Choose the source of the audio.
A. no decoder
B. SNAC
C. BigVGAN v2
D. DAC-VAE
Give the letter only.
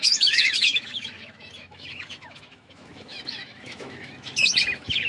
D